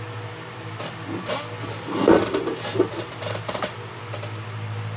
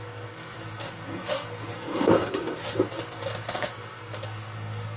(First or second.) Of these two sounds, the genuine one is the first